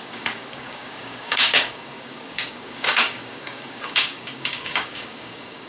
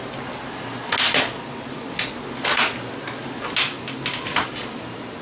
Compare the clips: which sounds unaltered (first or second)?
second